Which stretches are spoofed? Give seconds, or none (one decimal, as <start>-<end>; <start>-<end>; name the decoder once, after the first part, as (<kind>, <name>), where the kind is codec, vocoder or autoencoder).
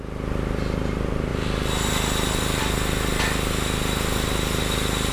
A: none